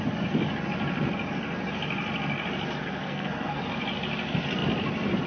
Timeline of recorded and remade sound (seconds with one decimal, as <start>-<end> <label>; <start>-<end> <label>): 0.0-2.8 recorded; 2.8-3.6 remade; 3.6-5.3 recorded